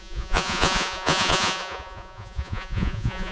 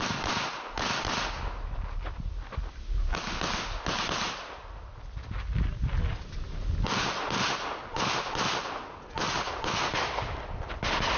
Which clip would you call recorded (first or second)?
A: second